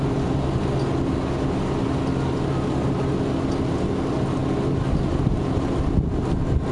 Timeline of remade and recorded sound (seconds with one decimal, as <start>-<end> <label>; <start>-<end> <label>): 0.0-6.7 recorded